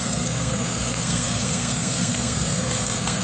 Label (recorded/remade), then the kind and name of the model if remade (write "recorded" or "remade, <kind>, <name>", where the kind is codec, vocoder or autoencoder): remade, codec, SNAC